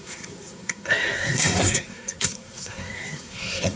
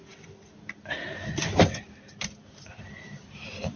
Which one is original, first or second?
second